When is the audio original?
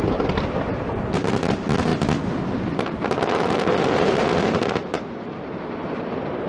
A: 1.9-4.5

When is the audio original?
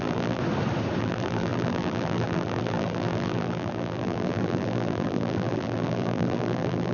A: 0.4-1.0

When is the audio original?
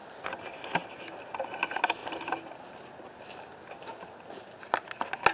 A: 0.0-5.3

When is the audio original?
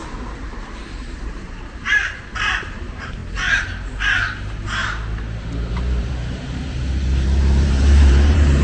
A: 0.0-0.8; 3.2-5.7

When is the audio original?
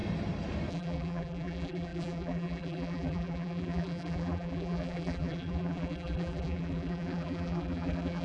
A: 0.0-0.7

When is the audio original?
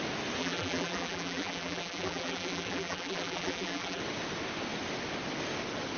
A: 0.0-0.4; 4.0-6.0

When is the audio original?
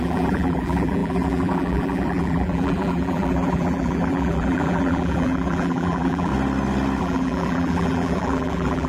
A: 6.3-7.0